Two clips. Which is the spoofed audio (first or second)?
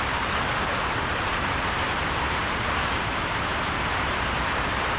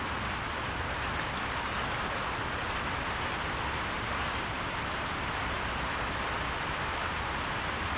first